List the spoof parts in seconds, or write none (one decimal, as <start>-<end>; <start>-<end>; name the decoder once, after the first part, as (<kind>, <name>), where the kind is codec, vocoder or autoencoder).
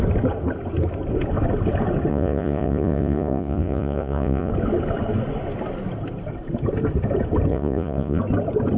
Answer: 2.1-4.5 (vocoder, Vocos); 7.5-8.2